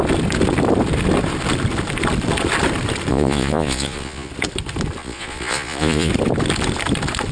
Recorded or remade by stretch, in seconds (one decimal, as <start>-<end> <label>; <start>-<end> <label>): 0.0-3.1 recorded; 3.1-4.3 remade; 4.3-5.0 recorded; 5.0-6.1 remade; 6.1-7.3 recorded